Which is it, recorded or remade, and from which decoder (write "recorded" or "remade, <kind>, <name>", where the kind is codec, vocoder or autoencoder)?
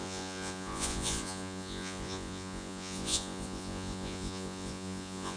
remade, vocoder, Vocos